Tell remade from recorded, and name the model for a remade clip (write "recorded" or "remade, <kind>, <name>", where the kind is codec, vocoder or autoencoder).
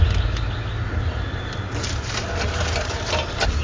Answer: recorded